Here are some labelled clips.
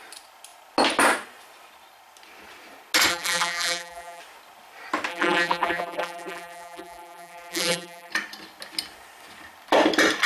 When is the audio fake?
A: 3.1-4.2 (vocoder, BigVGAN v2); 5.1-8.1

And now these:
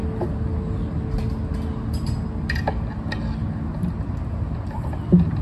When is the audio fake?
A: none

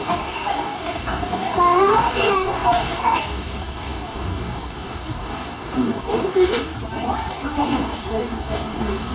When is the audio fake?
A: 0.0-6.7 (codec, DAC); 7.3-9.1

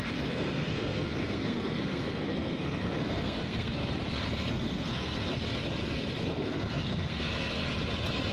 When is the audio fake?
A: 0.0-3.8 (codec, SNAC); 4.5-5.3; 6.3-7.6

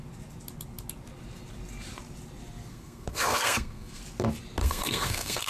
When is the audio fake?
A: 2.7-4.0 (codec, SNAC); 4.6-5.5

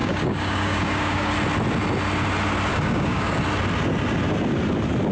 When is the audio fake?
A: 0.0-1.3 (codec, DAC); 2.7-3.4

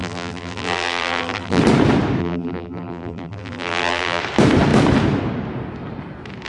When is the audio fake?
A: 0.0-1.6 (vocoder, BigVGAN v2); 2.2-4.2